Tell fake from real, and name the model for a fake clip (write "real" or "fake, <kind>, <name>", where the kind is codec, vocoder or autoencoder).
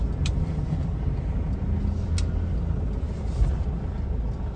real